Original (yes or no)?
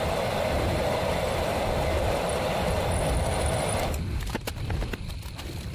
no